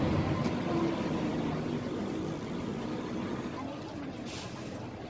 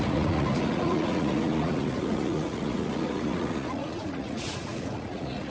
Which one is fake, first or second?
second